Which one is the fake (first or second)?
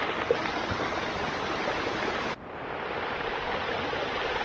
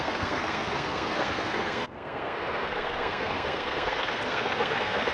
second